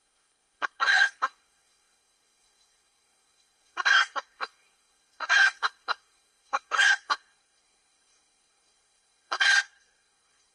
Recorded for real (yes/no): no